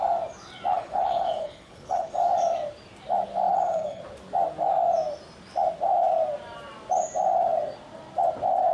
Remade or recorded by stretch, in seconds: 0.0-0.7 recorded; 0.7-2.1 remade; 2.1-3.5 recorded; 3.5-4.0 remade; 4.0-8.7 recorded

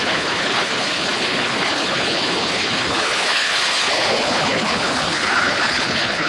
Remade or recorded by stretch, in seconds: 0.0-6.3 remade